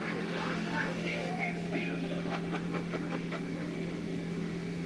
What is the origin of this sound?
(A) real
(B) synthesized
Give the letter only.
B